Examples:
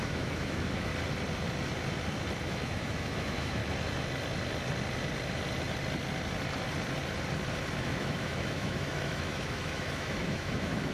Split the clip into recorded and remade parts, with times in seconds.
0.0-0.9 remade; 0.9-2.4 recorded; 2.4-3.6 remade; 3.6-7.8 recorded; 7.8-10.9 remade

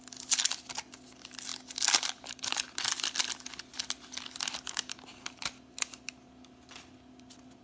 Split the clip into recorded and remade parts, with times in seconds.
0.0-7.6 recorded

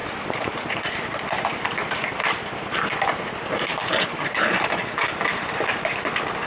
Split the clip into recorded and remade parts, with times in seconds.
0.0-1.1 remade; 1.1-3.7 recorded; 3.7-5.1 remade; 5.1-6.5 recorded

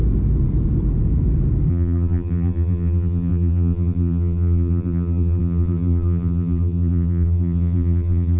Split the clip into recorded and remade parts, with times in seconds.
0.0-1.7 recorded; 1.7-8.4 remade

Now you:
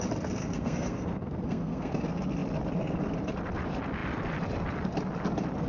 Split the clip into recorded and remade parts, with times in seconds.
0.0-0.4 recorded; 0.4-2.0 remade; 2.0-5.7 recorded

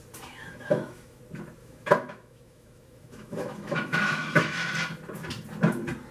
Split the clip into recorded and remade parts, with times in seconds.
0.0-0.4 recorded; 0.4-1.2 remade; 1.2-1.6 recorded; 1.6-4.7 remade; 4.7-6.1 recorded

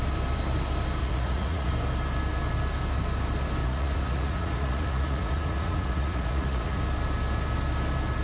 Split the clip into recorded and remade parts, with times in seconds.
0.0-1.0 recorded; 1.0-1.7 remade; 1.7-3.6 recorded; 3.6-6.8 remade; 6.8-8.2 recorded

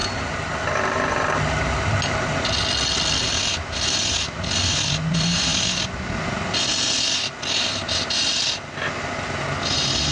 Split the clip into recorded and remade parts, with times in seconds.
0.0-10.1 recorded